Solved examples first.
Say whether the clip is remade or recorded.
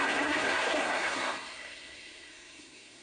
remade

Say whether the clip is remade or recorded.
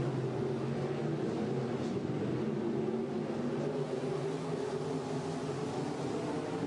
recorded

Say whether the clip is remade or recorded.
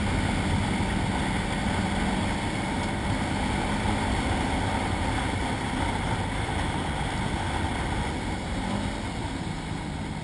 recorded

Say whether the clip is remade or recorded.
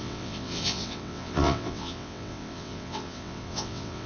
remade